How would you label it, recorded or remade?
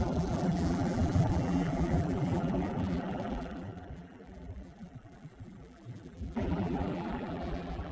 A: remade